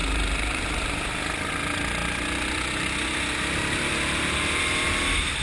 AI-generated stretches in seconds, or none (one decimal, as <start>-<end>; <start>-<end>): 0.0-1.1